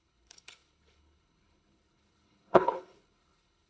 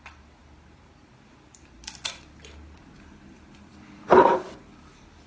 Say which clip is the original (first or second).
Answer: second